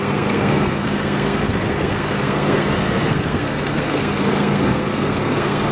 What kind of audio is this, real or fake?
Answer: fake